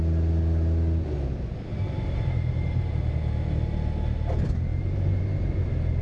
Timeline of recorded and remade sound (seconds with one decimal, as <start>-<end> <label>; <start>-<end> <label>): 0.0-1.7 recorded; 1.7-2.9 remade; 2.9-4.7 recorded; 4.7-5.2 remade; 5.2-6.0 recorded